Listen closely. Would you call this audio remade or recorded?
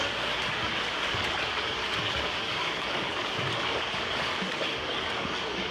remade